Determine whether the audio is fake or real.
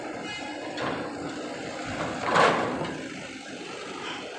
real